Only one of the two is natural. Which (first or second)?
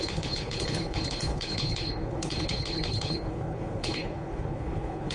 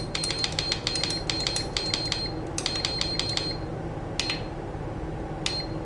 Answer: second